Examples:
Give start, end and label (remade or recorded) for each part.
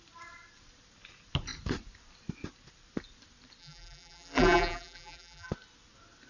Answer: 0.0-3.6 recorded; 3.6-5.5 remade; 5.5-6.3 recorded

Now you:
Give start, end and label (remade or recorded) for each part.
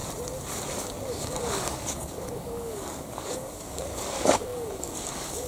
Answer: 0.0-1.1 recorded; 1.1-5.5 remade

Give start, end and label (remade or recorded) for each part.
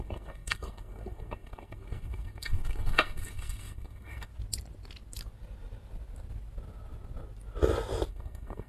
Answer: 0.0-4.3 remade; 4.3-8.1 recorded; 8.1-8.7 remade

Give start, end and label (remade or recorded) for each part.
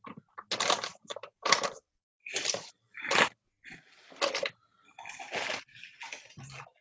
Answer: 0.0-0.9 recorded; 0.9-3.4 remade; 3.4-6.8 recorded